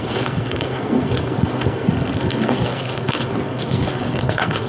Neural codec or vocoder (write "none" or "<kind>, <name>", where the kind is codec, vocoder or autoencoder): codec, SNAC